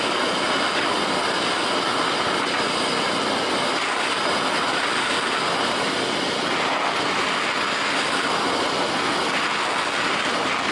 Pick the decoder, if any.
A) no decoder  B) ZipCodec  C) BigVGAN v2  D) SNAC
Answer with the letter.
A